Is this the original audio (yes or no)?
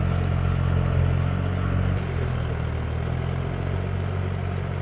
yes